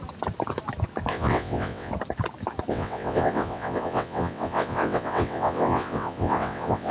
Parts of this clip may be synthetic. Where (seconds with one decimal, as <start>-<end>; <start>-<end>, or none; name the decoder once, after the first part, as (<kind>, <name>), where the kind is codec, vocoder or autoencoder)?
1.1-1.9 (vocoder, WaveNeXt); 2.7-6.9